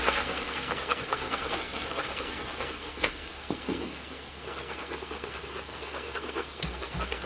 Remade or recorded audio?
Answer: remade